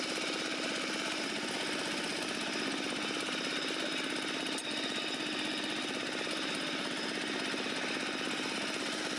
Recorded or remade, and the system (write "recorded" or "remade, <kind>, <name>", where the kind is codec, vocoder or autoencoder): recorded